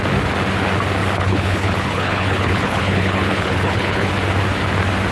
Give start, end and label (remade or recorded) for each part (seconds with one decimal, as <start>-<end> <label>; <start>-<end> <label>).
0.0-1.0 recorded; 1.0-4.1 remade; 4.1-5.1 recorded